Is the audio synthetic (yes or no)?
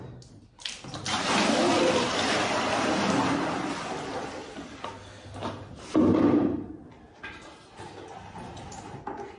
no